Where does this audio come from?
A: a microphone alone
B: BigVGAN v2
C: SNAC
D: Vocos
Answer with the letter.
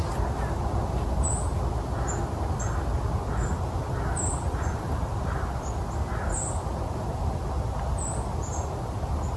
A